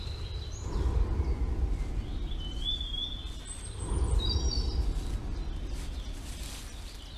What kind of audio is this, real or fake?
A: real